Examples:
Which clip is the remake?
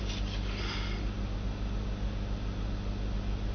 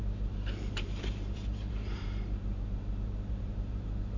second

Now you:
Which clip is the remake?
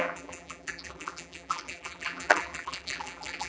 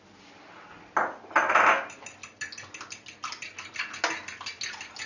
first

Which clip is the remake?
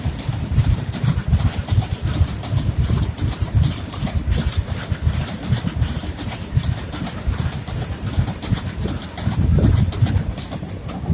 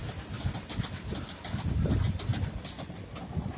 first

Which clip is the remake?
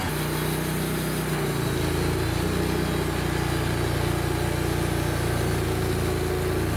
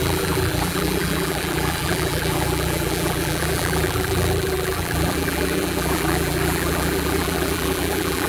second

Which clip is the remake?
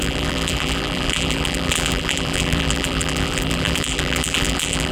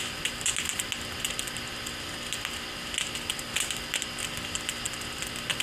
first